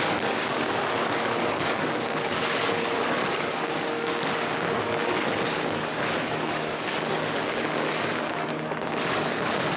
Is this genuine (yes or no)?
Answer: no